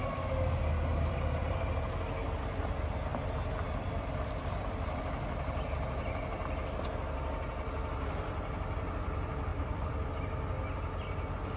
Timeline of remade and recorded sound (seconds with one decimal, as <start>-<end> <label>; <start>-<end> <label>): 0.0-0.9 recorded; 0.9-1.6 remade; 1.6-3.1 recorded; 3.1-5.0 remade; 5.0-9.5 recorded; 9.5-10.1 remade; 10.1-11.6 recorded